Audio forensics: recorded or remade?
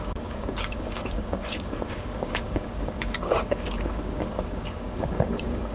remade